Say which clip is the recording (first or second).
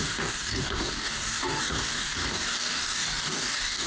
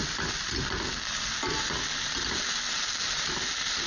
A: second